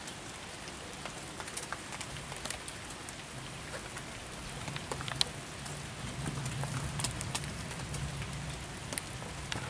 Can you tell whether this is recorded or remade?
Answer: recorded